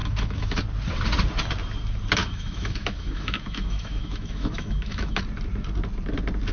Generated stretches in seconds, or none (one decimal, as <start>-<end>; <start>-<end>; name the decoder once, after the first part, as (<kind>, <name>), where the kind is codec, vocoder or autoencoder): 0.0-0.6 (autoencoder, DAC-VAE); 2.2-5.2